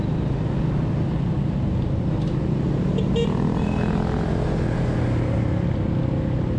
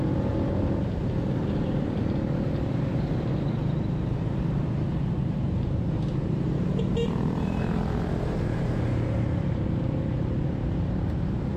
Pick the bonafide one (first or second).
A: first